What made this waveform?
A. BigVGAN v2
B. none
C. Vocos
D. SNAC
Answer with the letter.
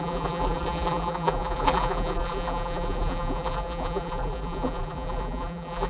A